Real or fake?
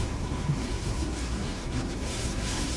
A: fake